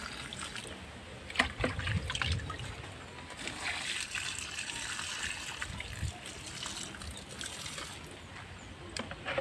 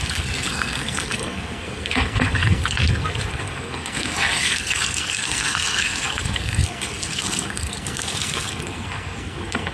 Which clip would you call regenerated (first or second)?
second